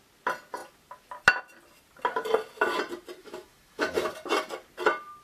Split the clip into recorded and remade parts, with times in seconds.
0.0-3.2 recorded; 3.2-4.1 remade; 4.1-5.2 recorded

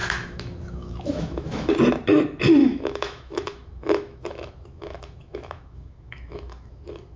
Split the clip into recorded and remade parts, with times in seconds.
0.0-1.7 remade; 1.7-2.6 recorded; 2.6-7.2 remade

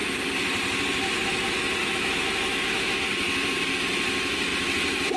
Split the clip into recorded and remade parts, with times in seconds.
0.0-1.8 recorded; 1.8-3.0 remade; 3.0-5.2 recorded